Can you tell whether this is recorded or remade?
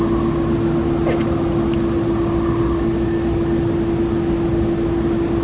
recorded